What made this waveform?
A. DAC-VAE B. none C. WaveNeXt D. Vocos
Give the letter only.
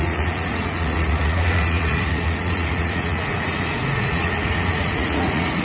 D